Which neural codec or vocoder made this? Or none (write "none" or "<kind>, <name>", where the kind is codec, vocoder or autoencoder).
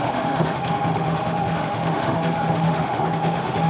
autoencoder, DAC-VAE